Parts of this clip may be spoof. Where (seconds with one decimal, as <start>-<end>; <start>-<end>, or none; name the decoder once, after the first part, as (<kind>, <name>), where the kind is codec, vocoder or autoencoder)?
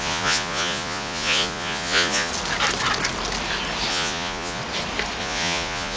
0.0-2.3 (vocoder, Vocos); 3.9-4.6; 5.2-6.0